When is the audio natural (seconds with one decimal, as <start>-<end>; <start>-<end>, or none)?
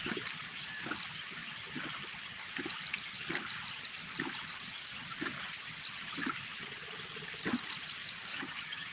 0.0-8.3